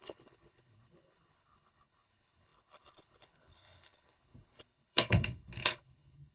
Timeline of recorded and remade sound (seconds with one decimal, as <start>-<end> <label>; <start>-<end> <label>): 0.0-6.3 remade